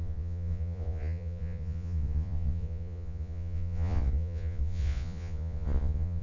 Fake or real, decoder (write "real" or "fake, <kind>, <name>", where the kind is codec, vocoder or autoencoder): fake, vocoder, Vocos